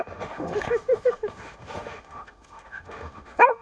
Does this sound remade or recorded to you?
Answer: remade